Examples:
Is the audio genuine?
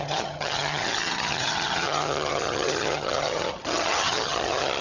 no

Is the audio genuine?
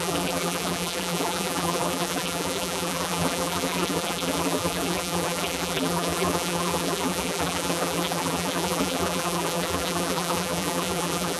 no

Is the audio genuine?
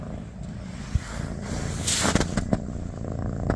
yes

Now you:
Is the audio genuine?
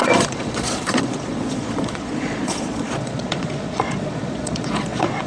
no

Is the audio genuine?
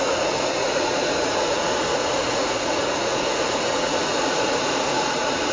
no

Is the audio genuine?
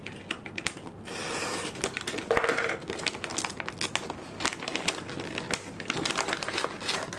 yes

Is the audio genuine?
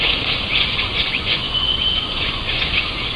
no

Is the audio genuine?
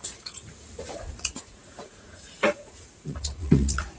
no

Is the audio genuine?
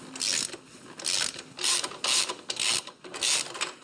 yes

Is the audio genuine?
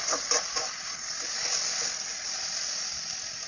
yes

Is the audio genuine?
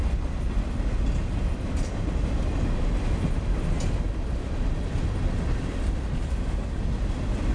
yes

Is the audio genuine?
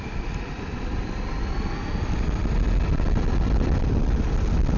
yes